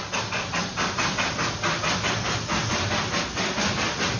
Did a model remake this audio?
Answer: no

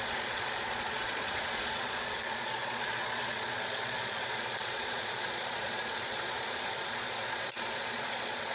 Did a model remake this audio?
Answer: yes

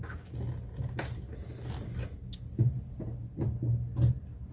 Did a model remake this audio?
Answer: no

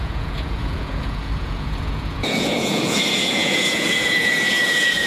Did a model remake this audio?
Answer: yes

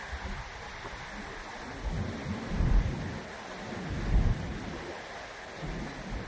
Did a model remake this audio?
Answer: no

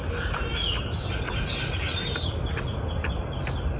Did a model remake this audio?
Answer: no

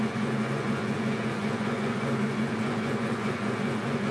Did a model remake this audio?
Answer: yes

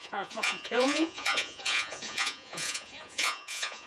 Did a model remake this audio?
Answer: yes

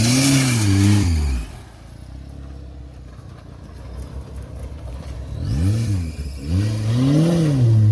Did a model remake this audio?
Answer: no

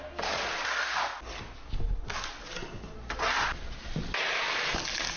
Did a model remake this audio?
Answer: no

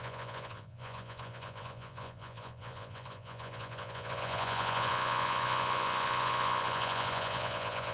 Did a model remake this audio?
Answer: yes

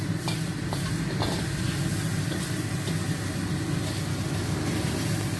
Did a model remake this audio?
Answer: no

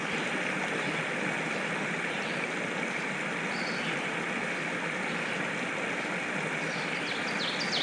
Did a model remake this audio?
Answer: no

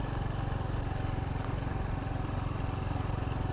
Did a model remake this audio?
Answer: no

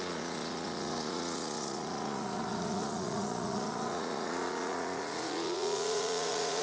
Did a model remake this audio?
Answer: yes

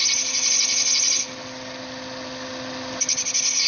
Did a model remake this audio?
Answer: no